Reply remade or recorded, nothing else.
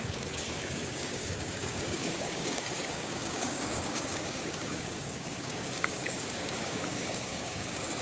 remade